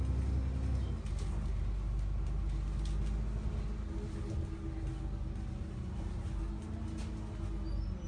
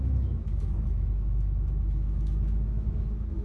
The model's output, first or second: second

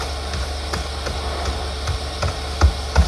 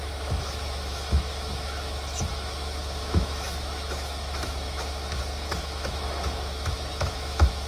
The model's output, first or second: second